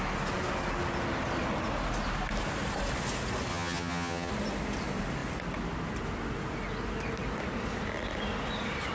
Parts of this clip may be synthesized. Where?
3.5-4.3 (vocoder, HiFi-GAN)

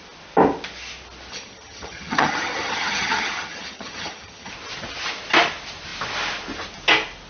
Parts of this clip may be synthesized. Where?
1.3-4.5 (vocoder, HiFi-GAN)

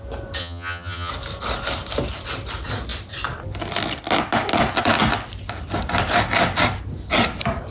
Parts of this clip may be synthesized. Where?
0.4-1.1 (vocoder, HiFi-GAN)

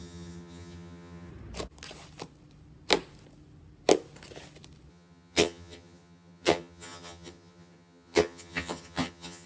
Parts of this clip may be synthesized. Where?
0.0-1.3 (vocoder, HiFi-GAN); 4.9-9.5

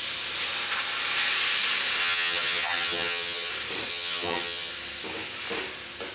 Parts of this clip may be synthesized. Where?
2.0-3.5 (vocoder, HiFi-GAN); 3.9-4.7

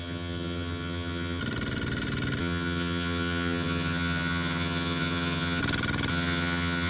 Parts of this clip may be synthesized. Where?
0.0-1.4 (vocoder, HiFi-GAN); 2.4-5.6; 6.1-6.9

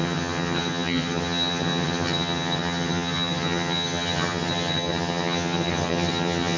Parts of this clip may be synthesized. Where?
0.0-6.6 (vocoder, HiFi-GAN)